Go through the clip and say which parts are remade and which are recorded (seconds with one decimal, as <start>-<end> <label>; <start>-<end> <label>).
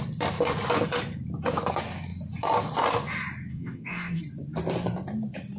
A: 0.0-3.5 recorded; 3.5-4.2 remade; 4.2-5.6 recorded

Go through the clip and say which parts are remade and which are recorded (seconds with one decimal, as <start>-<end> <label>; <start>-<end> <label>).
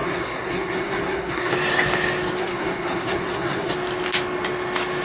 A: 0.0-1.5 remade; 1.5-2.4 recorded; 2.4-3.7 remade; 3.7-5.0 recorded